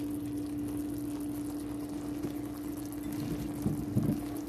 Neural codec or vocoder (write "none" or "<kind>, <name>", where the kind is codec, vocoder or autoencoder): none